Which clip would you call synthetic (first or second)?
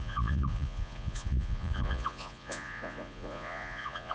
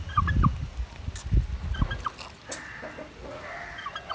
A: first